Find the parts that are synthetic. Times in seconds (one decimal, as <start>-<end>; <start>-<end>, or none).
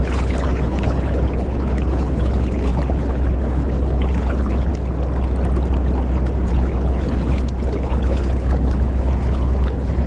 0.0-4.7; 6.5-10.1